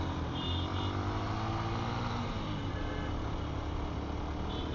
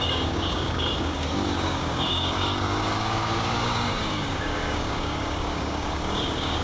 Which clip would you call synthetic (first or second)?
second